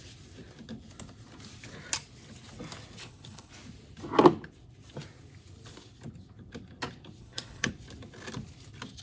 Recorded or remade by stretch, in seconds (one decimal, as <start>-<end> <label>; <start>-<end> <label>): 0.0-3.0 recorded; 3.0-3.5 remade; 3.5-7.2 recorded; 7.2-7.7 remade; 7.7-9.0 recorded